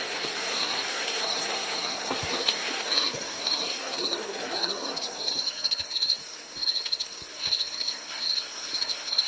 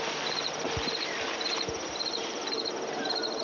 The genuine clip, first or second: second